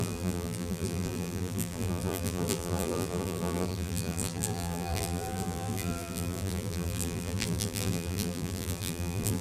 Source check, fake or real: fake